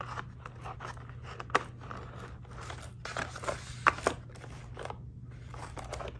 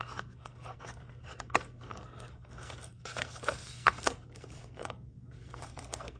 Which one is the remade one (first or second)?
second